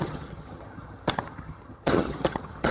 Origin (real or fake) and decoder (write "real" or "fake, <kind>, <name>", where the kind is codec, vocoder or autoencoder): fake, vocoder, HiFi-GAN